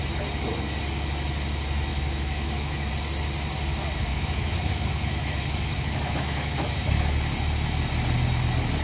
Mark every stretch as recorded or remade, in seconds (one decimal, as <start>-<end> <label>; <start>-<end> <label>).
0.0-1.9 recorded; 1.9-2.9 remade; 2.9-4.1 recorded; 4.1-6.9 remade; 6.9-8.8 recorded